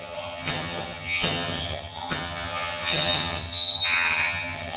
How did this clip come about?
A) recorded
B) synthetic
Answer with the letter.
B